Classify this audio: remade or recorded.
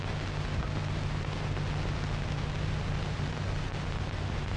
recorded